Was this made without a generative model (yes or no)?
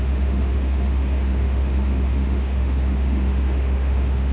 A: no